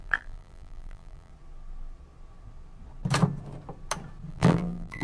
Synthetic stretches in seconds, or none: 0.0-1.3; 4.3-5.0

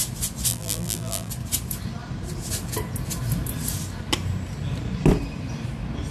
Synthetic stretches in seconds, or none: 0.5-1.3

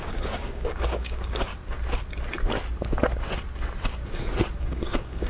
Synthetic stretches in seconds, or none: 0.0-1.5; 4.6-5.3

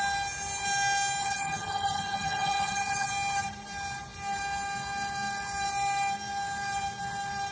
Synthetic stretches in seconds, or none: 1.2-3.1

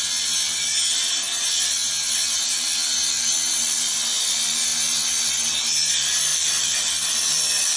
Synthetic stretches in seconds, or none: none

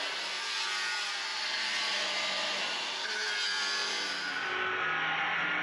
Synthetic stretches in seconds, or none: 1.3-2.6; 3.8-4.7

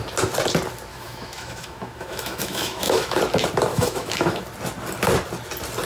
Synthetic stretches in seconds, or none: 0.9-3.2; 3.7-4.4

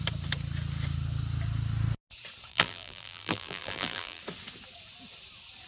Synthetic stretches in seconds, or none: 2.5-4.2